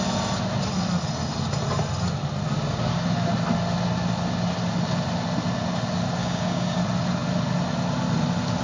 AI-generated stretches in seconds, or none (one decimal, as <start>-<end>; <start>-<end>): 6.2-6.8